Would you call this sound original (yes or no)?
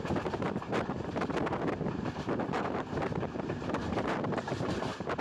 no